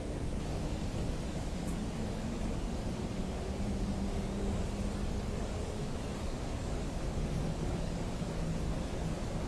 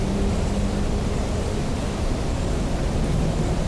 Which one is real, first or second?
second